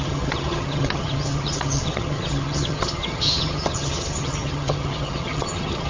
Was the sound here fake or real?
fake